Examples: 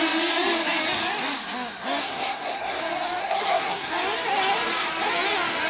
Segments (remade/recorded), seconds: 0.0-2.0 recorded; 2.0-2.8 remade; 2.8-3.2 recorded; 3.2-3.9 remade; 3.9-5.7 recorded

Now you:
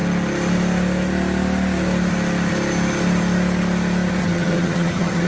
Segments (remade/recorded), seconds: 0.0-4.2 recorded; 4.2-5.3 remade